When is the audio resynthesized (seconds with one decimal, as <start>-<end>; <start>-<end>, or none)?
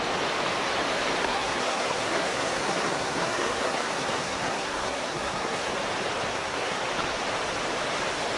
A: 1.2-5.7; 6.3-6.8